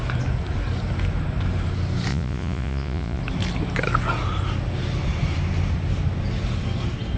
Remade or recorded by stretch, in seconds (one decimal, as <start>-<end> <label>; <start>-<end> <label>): 0.0-2.1 recorded; 2.1-3.2 remade; 3.2-7.2 recorded